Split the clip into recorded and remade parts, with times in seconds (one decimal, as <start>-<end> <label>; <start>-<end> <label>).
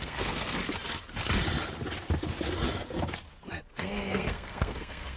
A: 0.0-0.6 remade; 0.6-3.7 recorded; 3.7-5.2 remade